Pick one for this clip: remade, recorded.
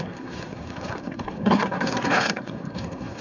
remade